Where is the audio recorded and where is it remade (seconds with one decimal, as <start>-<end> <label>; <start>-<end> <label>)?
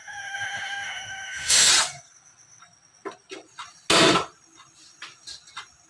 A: 0.0-1.7 remade; 1.7-5.9 recorded